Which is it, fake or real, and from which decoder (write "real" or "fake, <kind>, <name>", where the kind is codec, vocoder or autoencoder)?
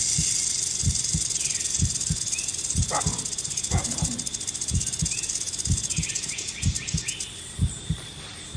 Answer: real